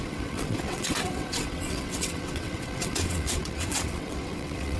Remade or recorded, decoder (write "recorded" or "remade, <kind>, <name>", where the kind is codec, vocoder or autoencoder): remade, vocoder, WaveNeXt